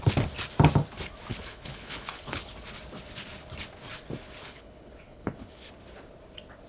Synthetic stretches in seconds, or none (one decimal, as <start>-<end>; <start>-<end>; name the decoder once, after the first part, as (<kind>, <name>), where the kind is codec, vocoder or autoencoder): 1.3-2.5 (codec, HILCodec); 4.4-5.7